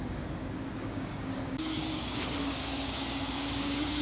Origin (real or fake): fake